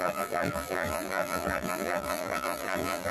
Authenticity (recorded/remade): remade